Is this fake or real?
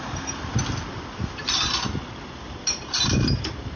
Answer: fake